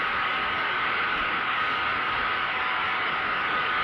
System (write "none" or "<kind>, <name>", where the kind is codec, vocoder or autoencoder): codec, DAC